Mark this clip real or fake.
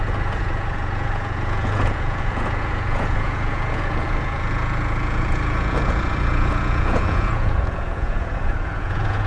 fake